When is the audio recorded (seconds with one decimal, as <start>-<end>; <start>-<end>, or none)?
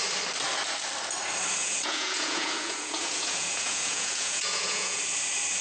0.0-1.6; 5.0-5.6